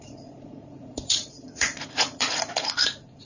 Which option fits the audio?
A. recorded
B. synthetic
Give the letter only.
B